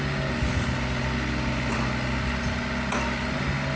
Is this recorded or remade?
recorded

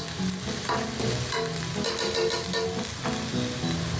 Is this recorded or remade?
recorded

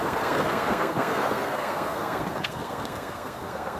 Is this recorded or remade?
remade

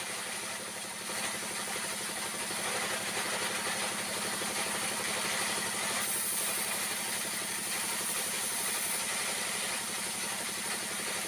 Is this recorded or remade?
remade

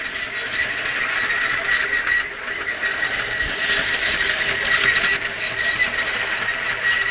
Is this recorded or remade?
recorded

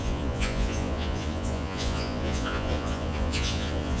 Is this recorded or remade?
remade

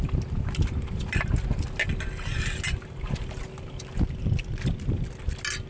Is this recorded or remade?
recorded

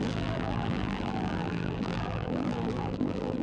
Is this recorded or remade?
remade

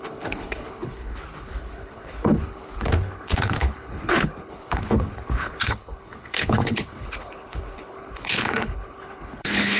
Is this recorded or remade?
remade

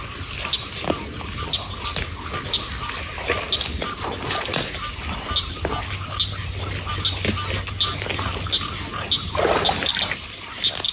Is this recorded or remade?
recorded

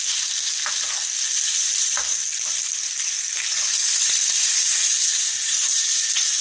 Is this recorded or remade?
recorded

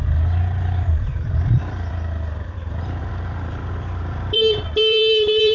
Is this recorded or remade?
remade